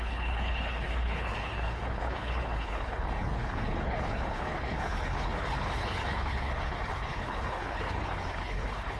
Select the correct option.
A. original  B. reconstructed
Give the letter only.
B